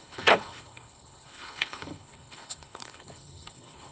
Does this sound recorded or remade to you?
remade